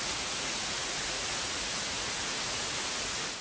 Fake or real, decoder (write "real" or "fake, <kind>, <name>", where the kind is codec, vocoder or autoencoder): fake, vocoder, Vocos